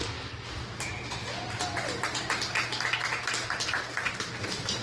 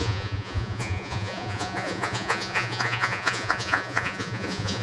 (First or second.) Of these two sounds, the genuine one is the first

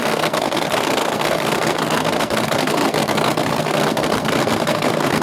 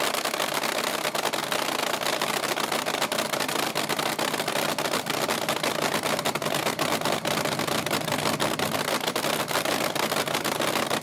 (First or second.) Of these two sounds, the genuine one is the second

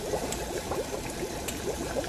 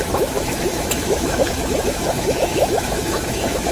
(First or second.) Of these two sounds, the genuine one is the first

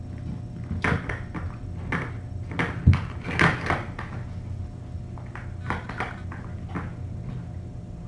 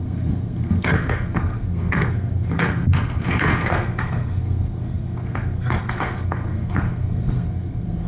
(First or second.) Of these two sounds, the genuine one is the first